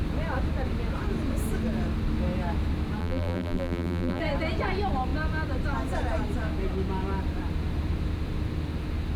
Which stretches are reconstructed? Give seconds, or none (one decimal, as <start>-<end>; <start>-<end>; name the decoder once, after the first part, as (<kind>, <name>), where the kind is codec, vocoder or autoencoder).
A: 3.0-4.2 (vocoder, BigVGAN v2)